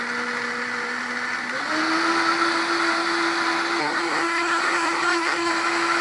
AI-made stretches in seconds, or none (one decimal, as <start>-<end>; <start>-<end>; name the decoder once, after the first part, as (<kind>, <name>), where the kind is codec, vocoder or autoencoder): 3.8-5.5 (codec, SNAC)